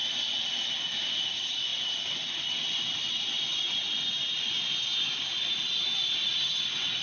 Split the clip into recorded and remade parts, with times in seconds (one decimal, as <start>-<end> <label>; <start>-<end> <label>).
0.0-7.0 recorded